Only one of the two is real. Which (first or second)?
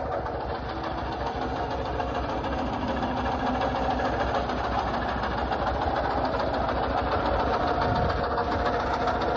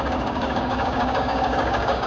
first